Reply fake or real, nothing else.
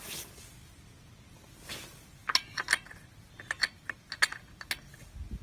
real